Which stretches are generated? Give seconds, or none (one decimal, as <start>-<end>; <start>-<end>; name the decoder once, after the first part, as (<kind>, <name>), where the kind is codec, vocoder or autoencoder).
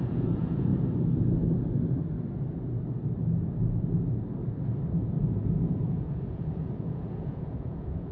0.0-0.7 (vocoder, Vocos); 5.2-8.1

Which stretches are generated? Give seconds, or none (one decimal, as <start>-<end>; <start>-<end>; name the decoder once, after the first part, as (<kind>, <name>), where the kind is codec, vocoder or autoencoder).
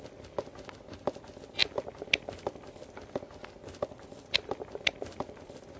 none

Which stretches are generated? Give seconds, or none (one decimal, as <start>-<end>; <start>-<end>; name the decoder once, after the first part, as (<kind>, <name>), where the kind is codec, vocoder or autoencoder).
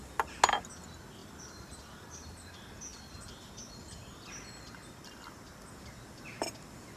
1.2-2.5 (vocoder, BigVGAN v2); 2.9-3.5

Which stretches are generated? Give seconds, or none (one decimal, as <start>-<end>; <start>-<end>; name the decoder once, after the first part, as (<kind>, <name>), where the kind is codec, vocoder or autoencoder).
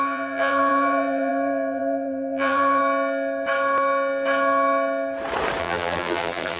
0.0-2.8 (vocoder, BigVGAN v2); 5.6-6.6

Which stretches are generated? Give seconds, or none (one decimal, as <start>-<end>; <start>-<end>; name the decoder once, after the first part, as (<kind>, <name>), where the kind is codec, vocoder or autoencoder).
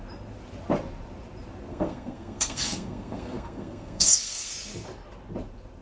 1.7-4.5 (codec, SNAC)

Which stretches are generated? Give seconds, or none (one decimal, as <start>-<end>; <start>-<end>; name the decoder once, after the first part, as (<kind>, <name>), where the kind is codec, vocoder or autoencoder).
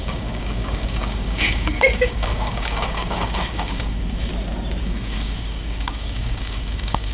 0.0-4.3 (codec, DAC); 4.8-7.1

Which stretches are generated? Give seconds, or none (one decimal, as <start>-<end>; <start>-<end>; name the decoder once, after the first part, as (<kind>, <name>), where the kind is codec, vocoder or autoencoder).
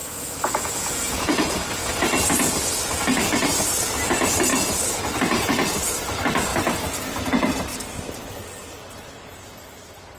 0.0-1.8 (vocoder, Vocos)